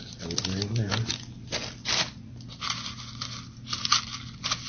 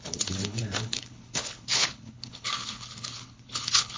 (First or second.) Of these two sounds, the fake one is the second